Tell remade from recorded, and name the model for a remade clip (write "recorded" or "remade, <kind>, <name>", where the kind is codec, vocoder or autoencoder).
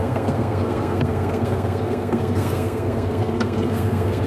remade, codec, SNAC